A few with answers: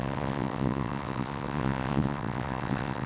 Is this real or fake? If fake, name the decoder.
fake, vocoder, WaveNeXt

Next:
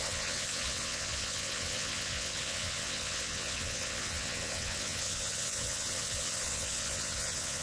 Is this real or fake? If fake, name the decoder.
fake, vocoder, WaveNeXt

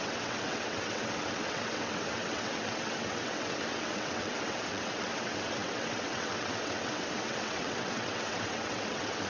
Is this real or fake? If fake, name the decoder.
fake, vocoder, WaveNeXt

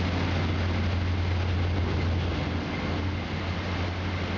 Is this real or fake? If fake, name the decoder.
real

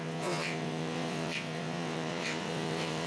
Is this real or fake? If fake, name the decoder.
fake, vocoder, WaveNeXt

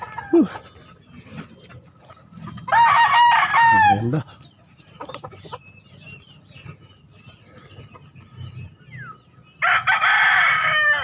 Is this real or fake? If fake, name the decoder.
real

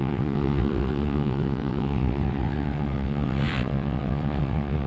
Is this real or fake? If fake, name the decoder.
fake, vocoder, WaveNeXt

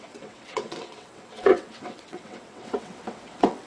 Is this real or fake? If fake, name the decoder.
fake, vocoder, WaveNeXt